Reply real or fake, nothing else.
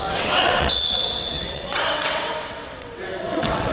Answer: fake